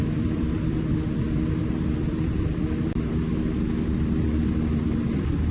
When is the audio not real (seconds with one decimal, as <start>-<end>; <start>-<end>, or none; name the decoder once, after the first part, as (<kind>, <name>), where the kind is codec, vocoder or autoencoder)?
0.0-2.9 (vocoder, BigVGAN v2)